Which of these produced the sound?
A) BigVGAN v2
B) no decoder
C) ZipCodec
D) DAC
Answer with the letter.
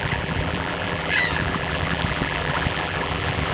A